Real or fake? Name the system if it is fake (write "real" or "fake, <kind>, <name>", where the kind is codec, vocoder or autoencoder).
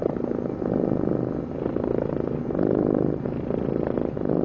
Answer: real